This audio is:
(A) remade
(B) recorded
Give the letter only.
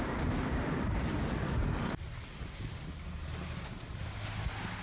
B